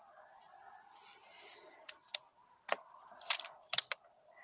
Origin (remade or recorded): recorded